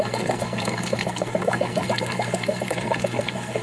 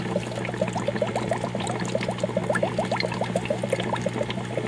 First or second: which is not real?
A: first